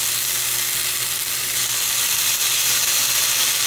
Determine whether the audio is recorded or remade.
recorded